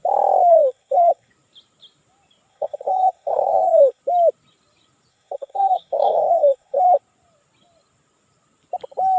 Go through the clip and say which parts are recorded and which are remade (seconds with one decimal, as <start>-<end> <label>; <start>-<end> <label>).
0.0-0.5 recorded; 0.5-1.3 remade; 1.3-2.5 recorded; 2.5-4.0 remade; 4.0-5.1 recorded; 5.1-7.0 remade; 7.0-9.2 recorded